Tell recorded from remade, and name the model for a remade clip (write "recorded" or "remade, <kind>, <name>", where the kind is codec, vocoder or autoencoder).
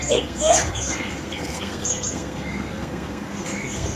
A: remade, codec, SNAC